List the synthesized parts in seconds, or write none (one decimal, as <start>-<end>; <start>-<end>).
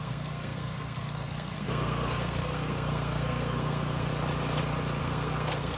0.0-4.1; 5.0-5.8